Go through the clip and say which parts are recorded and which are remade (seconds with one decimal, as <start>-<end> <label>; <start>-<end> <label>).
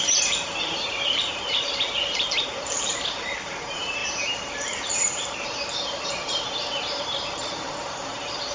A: 0.0-8.5 remade